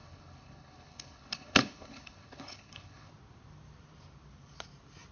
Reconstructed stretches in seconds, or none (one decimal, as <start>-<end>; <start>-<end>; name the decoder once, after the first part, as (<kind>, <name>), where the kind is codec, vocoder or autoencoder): 0.0-3.1 (codec, HILCodec)